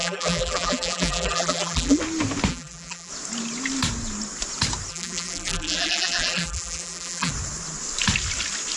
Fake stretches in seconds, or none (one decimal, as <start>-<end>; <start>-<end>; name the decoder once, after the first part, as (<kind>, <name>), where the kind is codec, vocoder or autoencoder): 0.0-2.0 (vocoder, BigVGAN v2); 2.5-3.1; 4.9-7.3